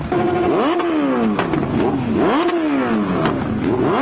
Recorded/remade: recorded